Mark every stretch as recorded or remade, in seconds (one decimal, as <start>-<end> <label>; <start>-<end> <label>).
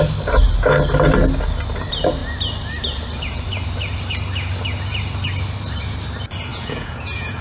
0.0-6.5 recorded; 6.5-7.4 remade